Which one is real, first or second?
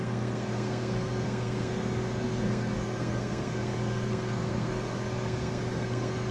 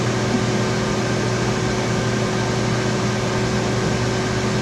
second